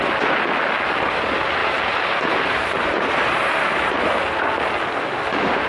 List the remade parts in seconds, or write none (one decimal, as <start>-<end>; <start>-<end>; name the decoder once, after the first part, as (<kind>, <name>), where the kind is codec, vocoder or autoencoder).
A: 1.6-4.4 (vocoder, BigVGAN v2)